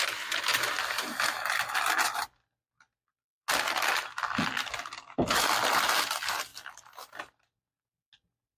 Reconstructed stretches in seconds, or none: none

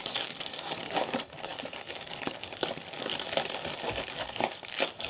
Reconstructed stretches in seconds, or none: 0.0-3.1 (codec, DAC); 4.1-5.1

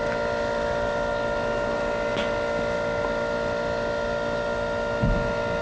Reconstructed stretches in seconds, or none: none

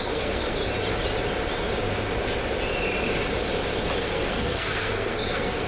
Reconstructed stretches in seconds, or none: 0.0-0.6 (codec, SNAC); 4.0-5.7